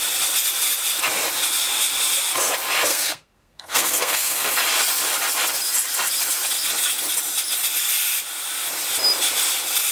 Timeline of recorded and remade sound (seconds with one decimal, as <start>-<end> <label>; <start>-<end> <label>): 0.0-2.9 recorded; 2.9-4.5 remade; 4.5-9.9 recorded